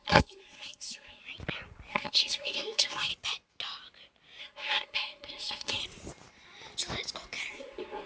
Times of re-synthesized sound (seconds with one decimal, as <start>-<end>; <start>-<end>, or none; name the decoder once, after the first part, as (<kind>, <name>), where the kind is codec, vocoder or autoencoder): 0.0-1.2 (codec, SNAC); 1.9-3.1; 4.4-5.8; 7.5-8.1